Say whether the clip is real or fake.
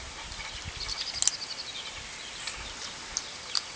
real